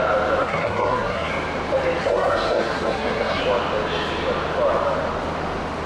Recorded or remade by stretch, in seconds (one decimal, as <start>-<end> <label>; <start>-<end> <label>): 0.0-0.4 recorded; 0.4-1.3 remade; 1.3-2.0 recorded; 2.0-3.4 remade; 3.4-5.9 recorded